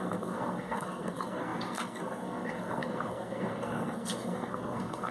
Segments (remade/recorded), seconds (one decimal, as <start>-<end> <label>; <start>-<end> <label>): 0.0-5.1 remade